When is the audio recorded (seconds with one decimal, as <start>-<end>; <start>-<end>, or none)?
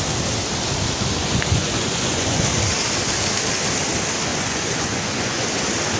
0.0-1.2; 2.5-4.3; 5.6-6.0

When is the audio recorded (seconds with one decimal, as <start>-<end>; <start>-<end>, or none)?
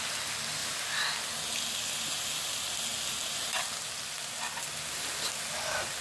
0.0-6.0